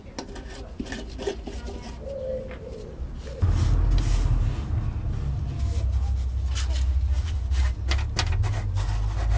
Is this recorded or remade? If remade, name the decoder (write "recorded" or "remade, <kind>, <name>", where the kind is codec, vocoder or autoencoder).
recorded